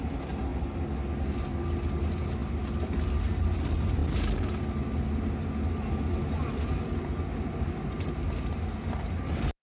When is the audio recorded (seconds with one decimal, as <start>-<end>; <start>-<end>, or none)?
0.0-9.6